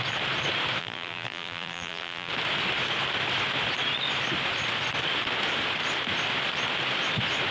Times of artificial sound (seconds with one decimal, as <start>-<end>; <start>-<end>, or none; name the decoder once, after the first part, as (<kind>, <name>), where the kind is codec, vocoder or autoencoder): 0.8-2.3 (vocoder, BigVGAN v2)